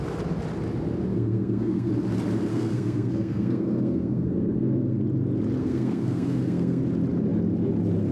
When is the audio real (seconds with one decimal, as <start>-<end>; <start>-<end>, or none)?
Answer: 0.0-1.1; 1.9-2.5; 5.0-5.6; 6.8-8.1